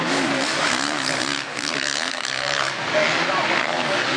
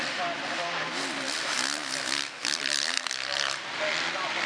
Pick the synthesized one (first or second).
first